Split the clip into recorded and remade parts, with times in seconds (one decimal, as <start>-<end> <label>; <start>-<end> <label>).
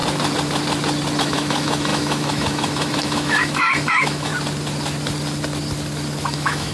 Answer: 0.0-1.2 recorded; 1.2-4.3 remade; 4.3-6.3 recorded; 6.3-6.7 remade